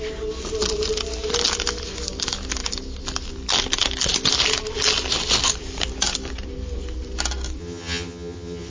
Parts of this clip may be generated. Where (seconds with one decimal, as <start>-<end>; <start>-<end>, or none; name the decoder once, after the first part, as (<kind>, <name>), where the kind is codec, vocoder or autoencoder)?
7.6-8.7 (vocoder, HiFi-GAN)